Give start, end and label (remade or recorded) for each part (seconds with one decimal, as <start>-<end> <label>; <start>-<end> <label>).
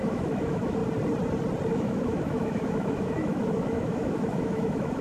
0.0-0.8 remade; 0.8-1.7 recorded; 1.7-5.0 remade